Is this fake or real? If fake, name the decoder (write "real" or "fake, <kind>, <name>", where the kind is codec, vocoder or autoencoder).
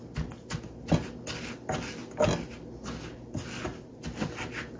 real